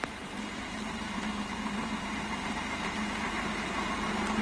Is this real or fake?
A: fake